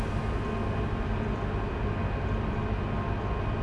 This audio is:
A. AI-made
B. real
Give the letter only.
B